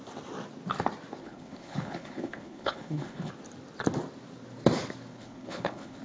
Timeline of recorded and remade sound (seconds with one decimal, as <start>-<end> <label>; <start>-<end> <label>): 0.0-1.2 recorded; 1.2-3.3 remade; 3.3-5.1 recorded; 5.1-6.0 remade